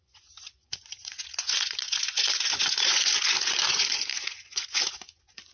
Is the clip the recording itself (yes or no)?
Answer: no